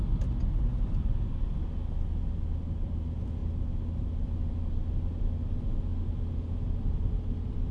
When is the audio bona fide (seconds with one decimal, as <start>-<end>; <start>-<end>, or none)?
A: 0.0-7.7